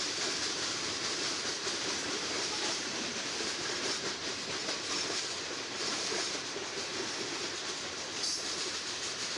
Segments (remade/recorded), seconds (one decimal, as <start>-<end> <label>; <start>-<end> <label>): 0.0-4.2 remade; 4.2-5.3 recorded; 5.3-6.9 remade; 6.9-7.4 recorded; 7.4-9.4 remade

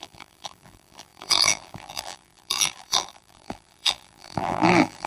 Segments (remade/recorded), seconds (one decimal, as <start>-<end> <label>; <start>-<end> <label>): 0.0-5.1 remade

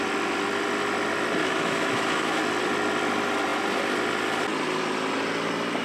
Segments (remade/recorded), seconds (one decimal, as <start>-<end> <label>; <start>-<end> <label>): 0.0-1.4 recorded; 1.4-2.4 remade; 2.4-5.8 recorded